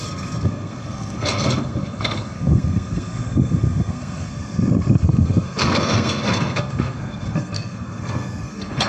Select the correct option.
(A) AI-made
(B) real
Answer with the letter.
A